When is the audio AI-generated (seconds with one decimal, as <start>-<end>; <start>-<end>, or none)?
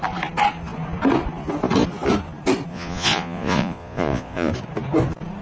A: 2.7-4.5